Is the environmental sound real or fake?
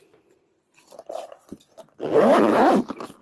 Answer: fake